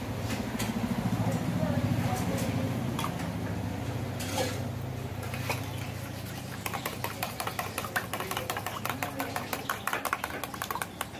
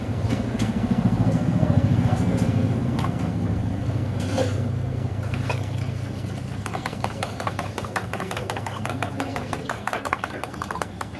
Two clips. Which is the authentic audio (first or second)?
first